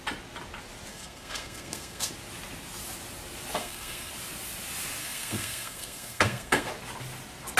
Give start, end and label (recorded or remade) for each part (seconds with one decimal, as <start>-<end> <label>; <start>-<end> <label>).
0.0-0.9 recorded; 0.9-2.1 remade; 2.1-3.6 recorded; 3.6-4.1 remade; 4.1-5.0 recorded; 5.0-6.7 remade; 6.7-7.6 recorded